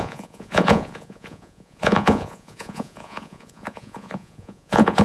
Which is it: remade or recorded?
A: remade